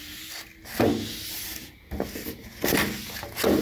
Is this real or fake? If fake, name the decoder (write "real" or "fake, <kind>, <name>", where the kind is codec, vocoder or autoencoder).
real